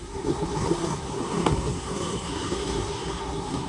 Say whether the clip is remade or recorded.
remade